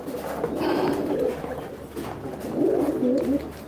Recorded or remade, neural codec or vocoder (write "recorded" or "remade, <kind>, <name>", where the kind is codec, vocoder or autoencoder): recorded